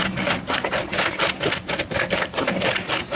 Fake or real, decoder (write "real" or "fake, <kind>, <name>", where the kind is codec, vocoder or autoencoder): real